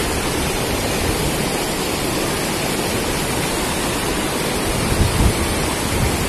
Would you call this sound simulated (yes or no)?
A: no